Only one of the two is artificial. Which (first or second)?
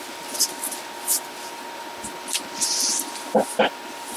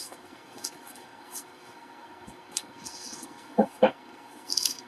second